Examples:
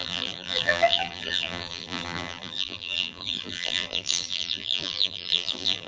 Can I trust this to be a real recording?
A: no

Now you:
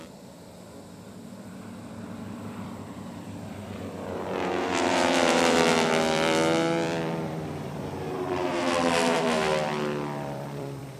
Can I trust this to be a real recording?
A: no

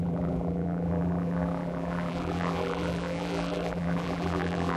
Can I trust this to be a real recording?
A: no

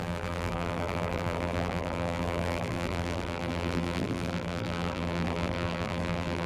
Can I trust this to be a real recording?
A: no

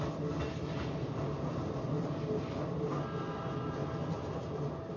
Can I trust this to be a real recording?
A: yes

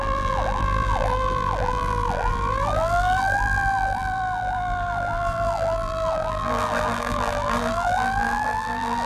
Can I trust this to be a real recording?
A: no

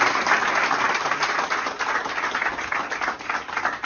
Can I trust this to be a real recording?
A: yes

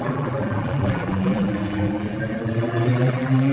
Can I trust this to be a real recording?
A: no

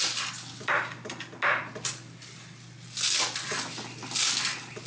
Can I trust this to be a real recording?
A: yes